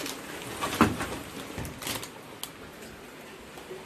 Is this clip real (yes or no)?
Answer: yes